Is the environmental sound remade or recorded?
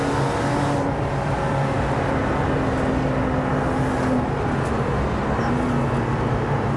recorded